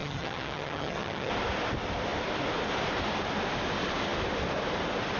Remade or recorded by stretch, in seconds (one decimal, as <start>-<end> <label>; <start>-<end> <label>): 0.0-1.3 remade; 1.3-5.2 recorded